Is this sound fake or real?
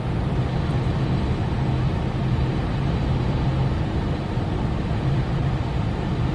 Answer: real